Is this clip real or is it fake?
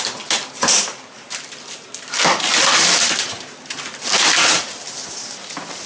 real